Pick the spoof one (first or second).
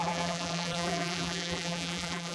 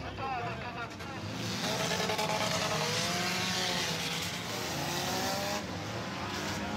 first